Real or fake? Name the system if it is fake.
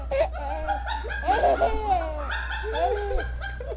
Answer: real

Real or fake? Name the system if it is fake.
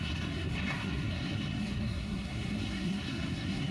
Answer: fake, codec, SNAC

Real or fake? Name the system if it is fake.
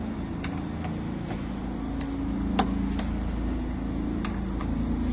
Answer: real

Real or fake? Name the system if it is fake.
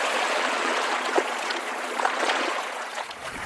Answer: fake, vocoder, Vocos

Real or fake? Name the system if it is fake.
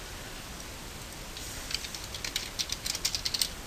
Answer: real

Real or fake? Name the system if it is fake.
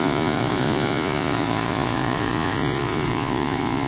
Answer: fake, vocoder, Vocos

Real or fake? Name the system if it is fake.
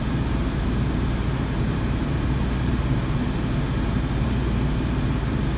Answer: fake, vocoder, BigVGAN v2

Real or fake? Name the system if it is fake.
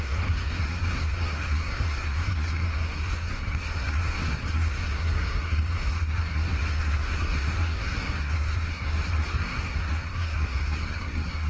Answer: fake, codec, SNAC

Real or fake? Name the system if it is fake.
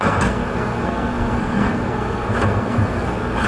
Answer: fake, codec, SNAC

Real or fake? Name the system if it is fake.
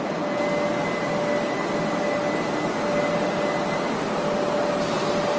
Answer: real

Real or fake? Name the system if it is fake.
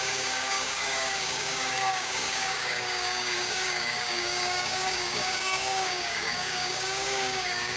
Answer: fake, codec, DAC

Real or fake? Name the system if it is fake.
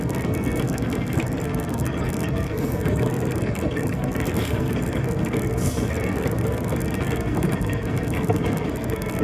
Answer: fake, codec, SNAC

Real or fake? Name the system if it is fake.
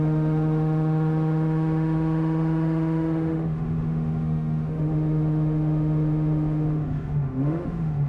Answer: fake, autoencoder, DAC-VAE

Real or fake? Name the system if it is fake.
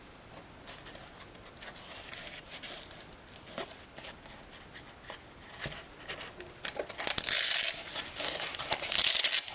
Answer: real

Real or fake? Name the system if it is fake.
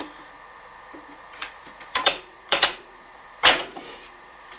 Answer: fake, vocoder, Vocos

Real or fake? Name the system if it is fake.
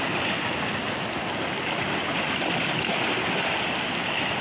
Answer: real